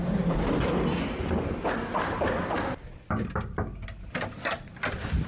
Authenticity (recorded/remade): recorded